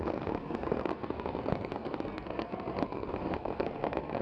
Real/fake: fake